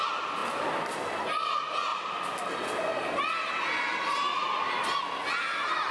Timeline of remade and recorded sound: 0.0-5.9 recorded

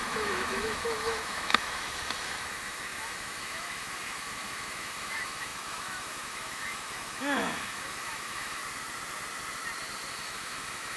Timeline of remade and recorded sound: 0.0-8.6 remade; 8.6-10.1 recorded; 10.1-11.0 remade

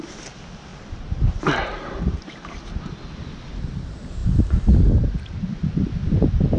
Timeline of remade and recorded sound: 0.0-0.7 recorded; 0.7-2.9 remade; 2.9-6.6 recorded

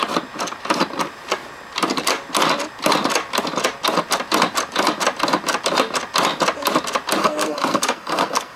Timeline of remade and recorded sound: 0.0-7.2 recorded; 7.2-8.6 remade